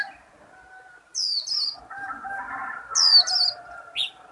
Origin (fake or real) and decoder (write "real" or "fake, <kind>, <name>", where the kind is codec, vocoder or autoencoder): real